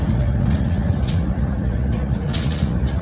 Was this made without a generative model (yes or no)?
no